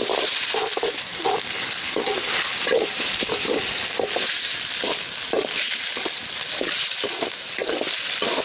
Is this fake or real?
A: real